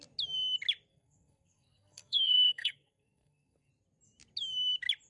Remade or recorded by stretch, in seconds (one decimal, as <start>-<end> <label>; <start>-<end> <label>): 0.0-0.9 recorded; 0.9-3.7 remade; 3.7-5.1 recorded